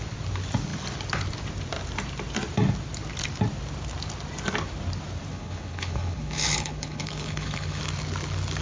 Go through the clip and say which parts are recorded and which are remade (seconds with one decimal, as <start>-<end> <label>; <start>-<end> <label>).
0.0-5.3 recorded; 5.3-7.8 remade; 7.8-8.6 recorded